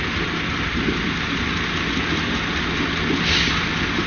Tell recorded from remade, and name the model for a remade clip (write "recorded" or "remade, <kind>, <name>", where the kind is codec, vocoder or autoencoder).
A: recorded